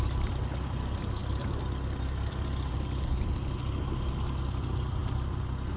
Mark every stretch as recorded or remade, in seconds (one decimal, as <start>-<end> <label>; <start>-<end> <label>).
0.0-5.8 recorded